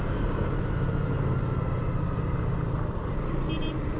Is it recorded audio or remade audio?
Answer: recorded